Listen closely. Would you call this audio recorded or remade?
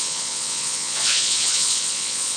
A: remade